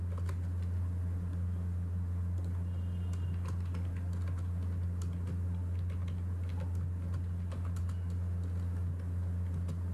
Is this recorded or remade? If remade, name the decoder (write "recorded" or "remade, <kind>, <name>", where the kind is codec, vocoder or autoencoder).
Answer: recorded